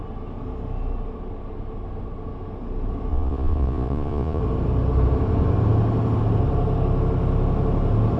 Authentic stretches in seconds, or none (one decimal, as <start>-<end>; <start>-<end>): 0.0-3.1; 4.4-8.2